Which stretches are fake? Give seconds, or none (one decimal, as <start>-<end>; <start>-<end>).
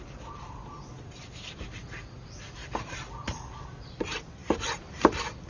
0.0-5.5